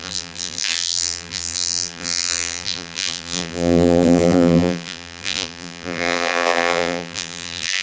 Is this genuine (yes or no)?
no